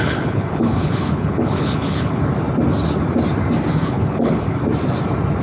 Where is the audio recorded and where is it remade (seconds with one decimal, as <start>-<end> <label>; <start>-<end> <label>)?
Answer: 0.0-2.2 remade; 2.2-3.7 recorded; 3.7-4.6 remade; 4.6-5.4 recorded

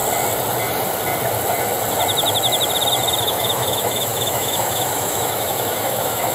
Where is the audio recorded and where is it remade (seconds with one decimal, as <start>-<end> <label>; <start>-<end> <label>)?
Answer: 0.0-3.2 recorded; 3.2-6.3 remade